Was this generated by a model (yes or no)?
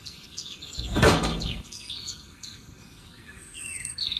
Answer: yes